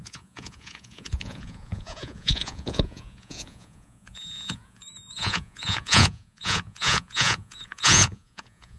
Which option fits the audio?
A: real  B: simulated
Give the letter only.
B